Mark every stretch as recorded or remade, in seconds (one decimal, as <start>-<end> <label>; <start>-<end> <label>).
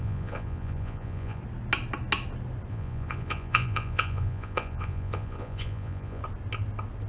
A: 0.0-1.4 remade; 1.4-2.7 recorded; 2.7-6.2 remade; 6.2-7.1 recorded